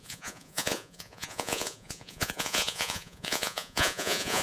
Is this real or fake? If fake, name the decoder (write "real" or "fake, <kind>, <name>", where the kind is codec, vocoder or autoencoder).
fake, vocoder, Vocos